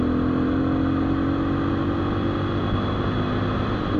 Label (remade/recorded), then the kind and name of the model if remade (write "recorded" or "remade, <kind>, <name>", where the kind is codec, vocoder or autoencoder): recorded